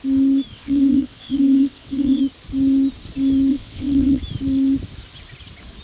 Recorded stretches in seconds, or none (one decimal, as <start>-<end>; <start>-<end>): 0.0-0.5; 2.2-3.5; 4.2-5.8